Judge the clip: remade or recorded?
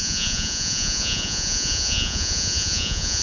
remade